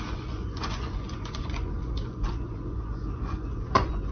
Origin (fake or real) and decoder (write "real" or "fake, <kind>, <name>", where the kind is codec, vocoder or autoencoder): fake, vocoder, Vocos